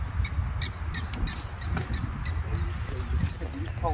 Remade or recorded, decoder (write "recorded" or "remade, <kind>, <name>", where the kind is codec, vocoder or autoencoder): recorded